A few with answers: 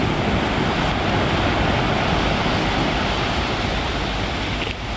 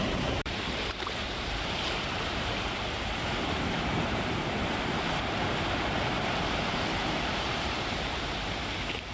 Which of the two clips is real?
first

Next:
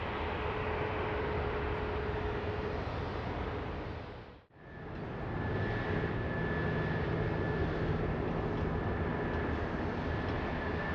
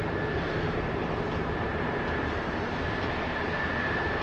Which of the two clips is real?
first